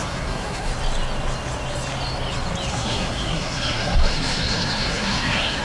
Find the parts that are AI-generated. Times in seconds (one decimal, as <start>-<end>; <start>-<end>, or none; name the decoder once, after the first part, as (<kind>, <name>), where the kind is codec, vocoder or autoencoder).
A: 0.0-0.7 (codec, SNAC); 2.7-5.6

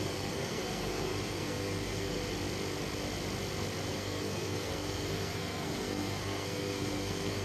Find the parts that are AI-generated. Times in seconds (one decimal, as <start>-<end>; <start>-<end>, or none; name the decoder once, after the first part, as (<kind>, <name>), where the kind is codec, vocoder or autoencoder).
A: 0.0-2.2 (codec, SNAC); 3.9-7.4